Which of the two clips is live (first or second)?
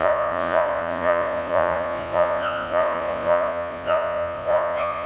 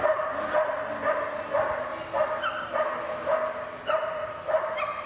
second